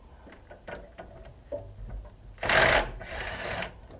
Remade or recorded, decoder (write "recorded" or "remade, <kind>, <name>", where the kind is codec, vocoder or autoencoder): recorded